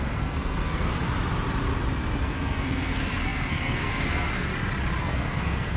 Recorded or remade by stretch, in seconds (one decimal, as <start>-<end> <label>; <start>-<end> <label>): 0.0-0.9 remade; 0.9-2.2 recorded; 2.2-4.5 remade; 4.5-5.0 recorded; 5.0-5.8 remade